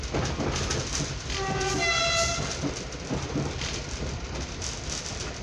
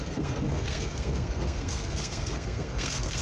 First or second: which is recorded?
first